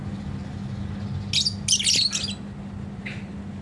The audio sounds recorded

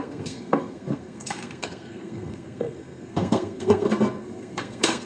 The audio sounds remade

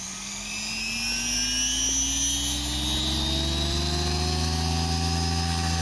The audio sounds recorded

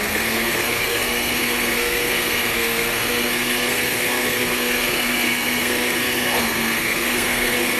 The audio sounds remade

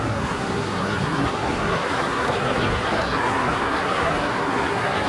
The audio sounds remade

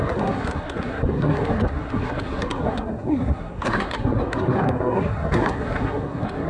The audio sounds remade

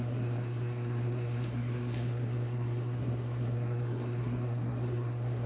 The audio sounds remade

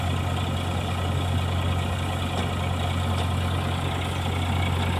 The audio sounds recorded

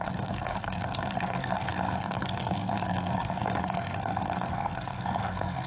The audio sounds remade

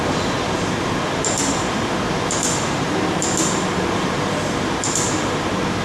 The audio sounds recorded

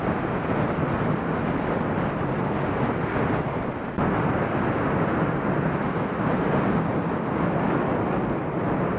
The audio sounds recorded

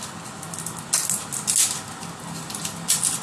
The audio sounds recorded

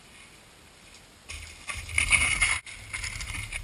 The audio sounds recorded